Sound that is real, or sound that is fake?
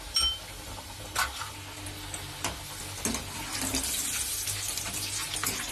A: real